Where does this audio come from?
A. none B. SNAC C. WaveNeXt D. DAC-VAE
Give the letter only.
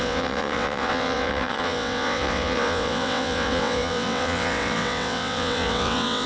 C